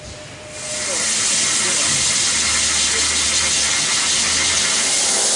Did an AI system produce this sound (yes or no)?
no